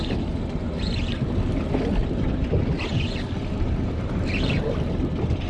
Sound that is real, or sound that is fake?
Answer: real